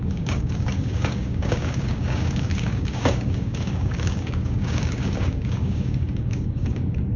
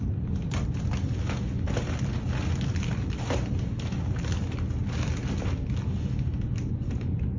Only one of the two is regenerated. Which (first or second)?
first